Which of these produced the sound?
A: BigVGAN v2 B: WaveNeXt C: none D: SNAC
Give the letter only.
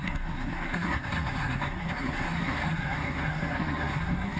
D